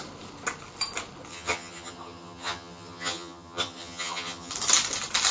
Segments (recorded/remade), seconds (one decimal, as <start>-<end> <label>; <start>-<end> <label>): 0.0-1.3 recorded; 1.3-4.5 remade; 4.5-5.3 recorded